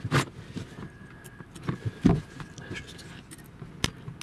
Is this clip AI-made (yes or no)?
no